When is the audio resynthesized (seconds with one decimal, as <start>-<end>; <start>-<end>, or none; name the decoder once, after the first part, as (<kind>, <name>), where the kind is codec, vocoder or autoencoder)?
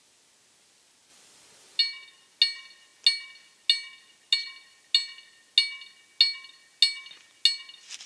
1.1-1.8 (vocoder, BigVGAN v2)